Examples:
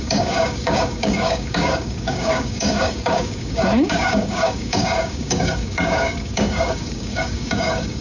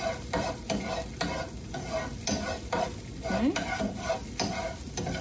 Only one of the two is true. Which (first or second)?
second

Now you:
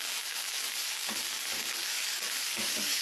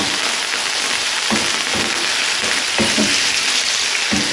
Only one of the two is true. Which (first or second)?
second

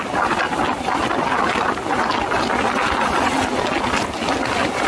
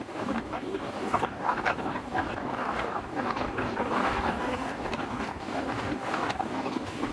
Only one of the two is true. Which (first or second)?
first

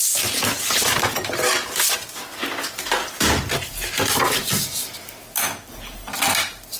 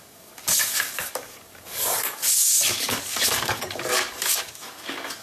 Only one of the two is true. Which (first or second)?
first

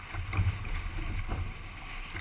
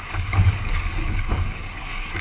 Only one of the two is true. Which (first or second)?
first